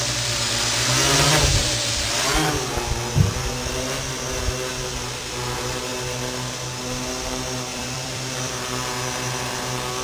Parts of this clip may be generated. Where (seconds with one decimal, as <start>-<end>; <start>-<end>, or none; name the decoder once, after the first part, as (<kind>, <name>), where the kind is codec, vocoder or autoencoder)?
7.7-8.5 (vocoder, BigVGAN v2)